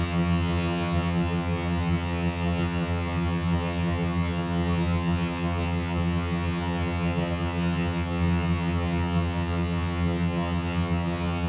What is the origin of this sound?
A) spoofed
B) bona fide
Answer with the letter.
A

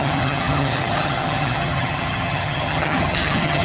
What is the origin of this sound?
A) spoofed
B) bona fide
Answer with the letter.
A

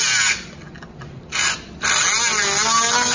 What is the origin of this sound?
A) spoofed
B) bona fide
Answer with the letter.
B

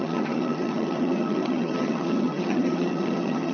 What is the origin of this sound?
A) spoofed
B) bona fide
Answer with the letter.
A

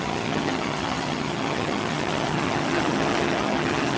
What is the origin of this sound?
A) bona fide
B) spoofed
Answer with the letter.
B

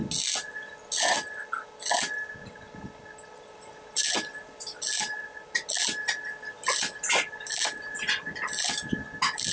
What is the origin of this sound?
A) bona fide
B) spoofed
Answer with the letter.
A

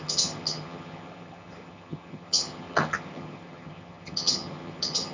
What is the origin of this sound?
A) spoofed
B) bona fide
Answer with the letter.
A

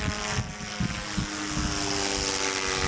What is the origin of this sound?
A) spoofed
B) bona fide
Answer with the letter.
B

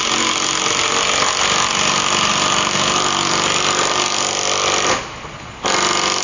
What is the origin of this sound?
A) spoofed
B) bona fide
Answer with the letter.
B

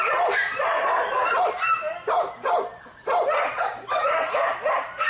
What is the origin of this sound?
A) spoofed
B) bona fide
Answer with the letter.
B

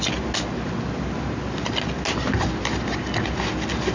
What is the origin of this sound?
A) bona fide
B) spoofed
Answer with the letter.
A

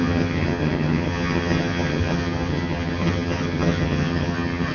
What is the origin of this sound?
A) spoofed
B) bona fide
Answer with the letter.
A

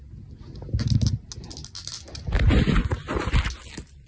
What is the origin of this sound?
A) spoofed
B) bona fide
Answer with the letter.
B